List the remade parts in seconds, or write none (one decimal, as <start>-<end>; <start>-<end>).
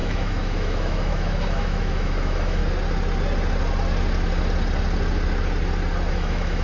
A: 0.0-2.6; 6.1-6.6